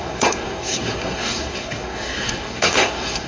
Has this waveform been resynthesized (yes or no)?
yes